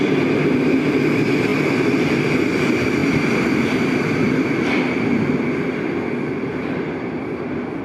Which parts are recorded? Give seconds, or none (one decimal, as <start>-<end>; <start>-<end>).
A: 0.0-7.8